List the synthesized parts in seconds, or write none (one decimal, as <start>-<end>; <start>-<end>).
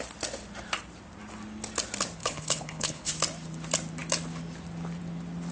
2.2-3.1